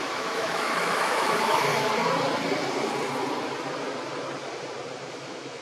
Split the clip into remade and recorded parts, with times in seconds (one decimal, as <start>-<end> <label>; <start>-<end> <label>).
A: 0.0-1.7 remade; 1.7-5.1 recorded; 5.1-5.6 remade

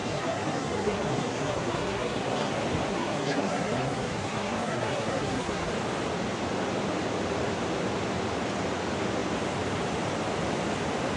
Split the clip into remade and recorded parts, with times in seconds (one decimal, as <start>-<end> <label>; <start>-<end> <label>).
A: 0.0-2.5 remade; 2.5-2.9 recorded; 2.9-5.7 remade; 5.7-11.2 recorded

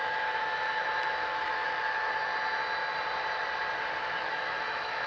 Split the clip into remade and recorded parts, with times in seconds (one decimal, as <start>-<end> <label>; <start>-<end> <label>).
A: 0.0-2.3 remade; 2.3-4.0 recorded; 4.0-5.1 remade

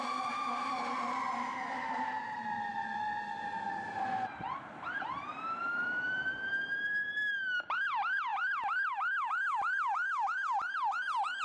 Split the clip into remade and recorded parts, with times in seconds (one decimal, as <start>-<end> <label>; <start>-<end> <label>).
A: 0.0-8.3 remade; 8.3-9.3 recorded; 9.3-11.4 remade

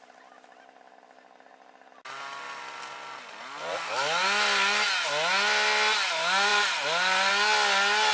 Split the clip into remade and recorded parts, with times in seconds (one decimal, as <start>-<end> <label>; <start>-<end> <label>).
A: 0.0-6.5 recorded; 6.5-7.3 remade; 7.3-8.1 recorded

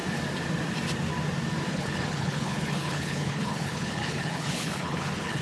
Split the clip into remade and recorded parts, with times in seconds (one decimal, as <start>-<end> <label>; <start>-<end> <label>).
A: 0.0-1.7 recorded; 1.7-5.4 remade